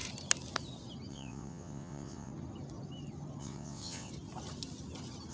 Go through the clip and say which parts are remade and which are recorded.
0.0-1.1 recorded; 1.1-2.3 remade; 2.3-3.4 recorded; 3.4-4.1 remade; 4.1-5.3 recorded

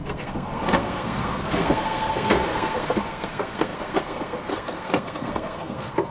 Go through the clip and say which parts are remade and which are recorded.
0.0-6.1 remade

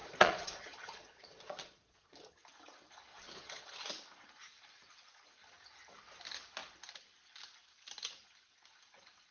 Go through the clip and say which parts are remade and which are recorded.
0.0-2.3 remade; 2.3-3.1 recorded; 3.1-3.9 remade; 3.9-9.3 recorded

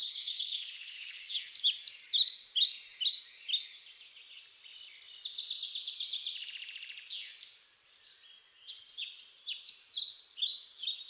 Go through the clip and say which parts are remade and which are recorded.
0.0-1.3 remade; 1.3-11.1 recorded

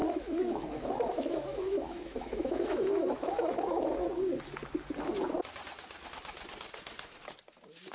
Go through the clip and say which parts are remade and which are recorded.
0.0-3.9 remade; 3.9-7.9 recorded

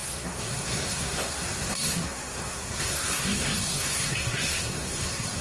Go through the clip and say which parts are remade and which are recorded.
0.0-5.4 remade

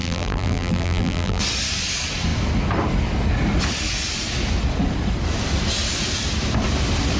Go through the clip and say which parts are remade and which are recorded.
0.0-1.4 remade; 1.4-7.2 recorded

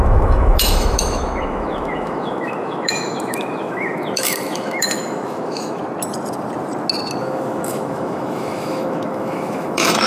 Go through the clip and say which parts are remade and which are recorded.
0.0-5.8 remade; 5.8-7.2 recorded; 7.2-10.1 remade